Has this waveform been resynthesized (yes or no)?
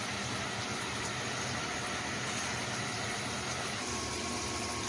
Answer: no